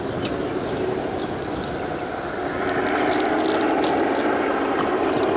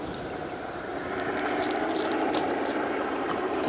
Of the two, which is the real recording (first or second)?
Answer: first